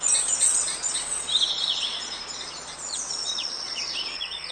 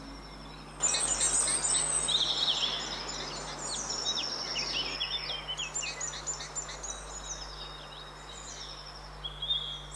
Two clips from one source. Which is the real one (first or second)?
second